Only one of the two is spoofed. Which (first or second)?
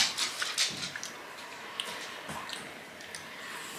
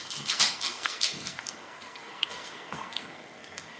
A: second